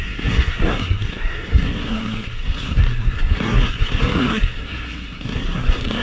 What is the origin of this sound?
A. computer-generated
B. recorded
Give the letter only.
A